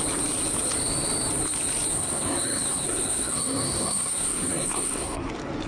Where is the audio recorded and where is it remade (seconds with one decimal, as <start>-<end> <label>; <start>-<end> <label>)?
0.0-1.9 recorded; 1.9-5.3 remade; 5.3-5.7 recorded